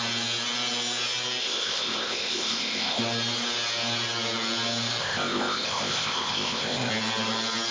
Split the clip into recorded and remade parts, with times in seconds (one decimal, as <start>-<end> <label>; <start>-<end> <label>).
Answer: 0.0-1.4 recorded; 1.4-3.0 remade; 3.0-5.0 recorded; 5.0-6.9 remade; 6.9-7.7 recorded

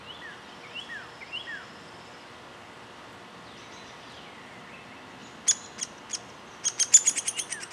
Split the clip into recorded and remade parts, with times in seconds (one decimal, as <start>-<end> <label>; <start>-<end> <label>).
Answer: 0.0-7.7 recorded

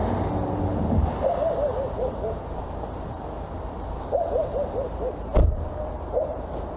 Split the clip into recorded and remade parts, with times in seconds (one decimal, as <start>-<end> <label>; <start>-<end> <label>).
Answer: 0.0-6.8 recorded

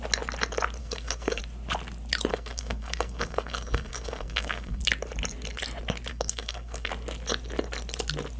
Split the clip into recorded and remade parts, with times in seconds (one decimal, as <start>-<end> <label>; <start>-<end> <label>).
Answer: 0.0-0.8 recorded; 0.8-1.4 remade; 1.4-2.3 recorded; 2.3-4.8 remade; 4.8-6.1 recorded; 6.1-6.9 remade; 6.9-8.4 recorded

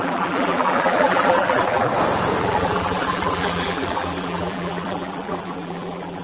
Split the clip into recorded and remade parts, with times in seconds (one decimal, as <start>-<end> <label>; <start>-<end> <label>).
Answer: 0.0-1.9 remade; 1.9-2.4 recorded; 2.4-6.2 remade

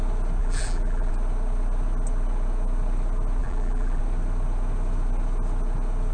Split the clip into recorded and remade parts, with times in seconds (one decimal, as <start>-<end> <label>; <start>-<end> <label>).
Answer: 0.0-0.4 recorded; 0.4-1.1 remade; 1.1-3.4 recorded; 3.4-4.0 remade; 4.0-6.1 recorded